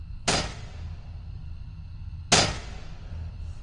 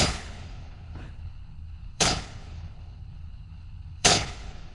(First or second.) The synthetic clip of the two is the second